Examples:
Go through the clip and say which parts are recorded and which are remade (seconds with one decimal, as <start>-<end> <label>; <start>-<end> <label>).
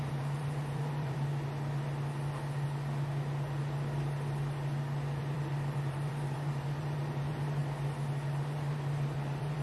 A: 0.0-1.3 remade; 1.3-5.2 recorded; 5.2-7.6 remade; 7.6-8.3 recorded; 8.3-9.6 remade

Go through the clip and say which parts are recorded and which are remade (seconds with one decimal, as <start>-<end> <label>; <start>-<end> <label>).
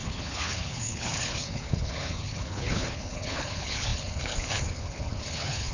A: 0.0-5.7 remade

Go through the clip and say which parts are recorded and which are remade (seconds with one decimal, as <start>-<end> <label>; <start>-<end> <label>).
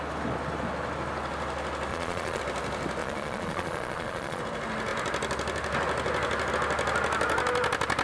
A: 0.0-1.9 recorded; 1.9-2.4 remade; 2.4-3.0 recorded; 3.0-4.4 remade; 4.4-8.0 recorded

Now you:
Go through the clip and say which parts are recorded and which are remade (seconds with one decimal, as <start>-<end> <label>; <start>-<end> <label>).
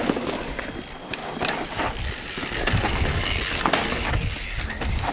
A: 0.0-5.1 recorded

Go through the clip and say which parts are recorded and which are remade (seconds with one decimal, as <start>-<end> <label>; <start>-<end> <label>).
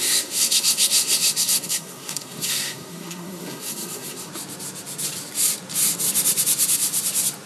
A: 0.0-4.3 remade; 4.3-7.5 recorded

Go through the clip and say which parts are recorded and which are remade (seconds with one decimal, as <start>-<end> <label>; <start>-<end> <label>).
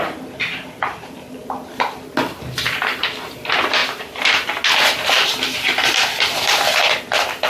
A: 0.0-7.5 recorded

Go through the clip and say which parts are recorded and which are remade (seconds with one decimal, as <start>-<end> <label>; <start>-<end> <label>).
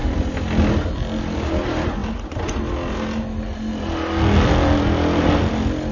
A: 0.0-5.9 recorded